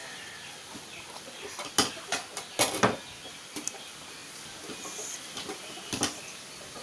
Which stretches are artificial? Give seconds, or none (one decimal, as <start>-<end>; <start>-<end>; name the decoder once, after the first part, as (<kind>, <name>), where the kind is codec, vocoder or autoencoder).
none